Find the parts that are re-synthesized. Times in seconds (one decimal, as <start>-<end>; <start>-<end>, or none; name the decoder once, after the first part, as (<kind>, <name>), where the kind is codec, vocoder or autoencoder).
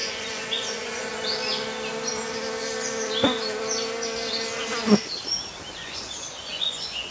0.0-1.1 (vocoder, Vocos); 5.8-7.1